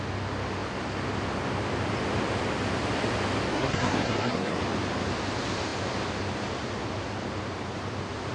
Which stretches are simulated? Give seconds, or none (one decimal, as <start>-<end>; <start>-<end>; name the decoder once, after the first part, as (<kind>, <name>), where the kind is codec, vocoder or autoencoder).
3.5-4.6 (codec, SNAC)